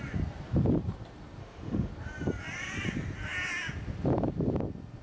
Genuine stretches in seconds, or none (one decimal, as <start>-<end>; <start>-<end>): 0.0-1.4; 1.9-5.0